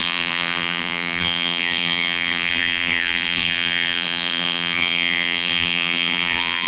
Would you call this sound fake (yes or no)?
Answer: yes